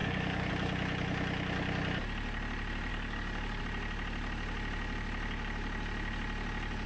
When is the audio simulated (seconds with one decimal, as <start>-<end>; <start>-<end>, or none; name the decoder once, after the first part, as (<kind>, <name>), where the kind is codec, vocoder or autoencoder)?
0.0-0.5 (codec, DAC); 2.9-3.6